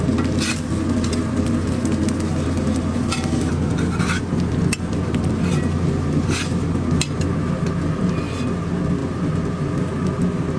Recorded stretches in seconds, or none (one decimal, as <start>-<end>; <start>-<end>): 0.0-10.6